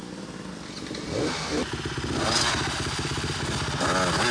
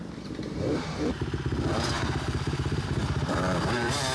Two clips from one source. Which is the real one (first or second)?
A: first